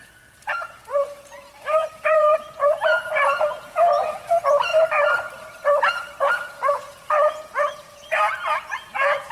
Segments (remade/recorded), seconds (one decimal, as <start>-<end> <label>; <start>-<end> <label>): 0.0-4.7 remade; 4.7-6.3 recorded; 6.3-9.3 remade